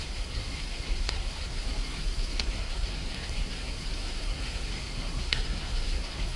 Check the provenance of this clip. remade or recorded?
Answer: remade